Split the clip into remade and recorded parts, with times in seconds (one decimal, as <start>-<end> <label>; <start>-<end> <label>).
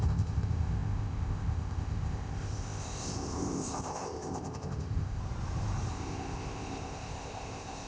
0.0-5.2 remade; 5.2-5.9 recorded; 5.9-7.9 remade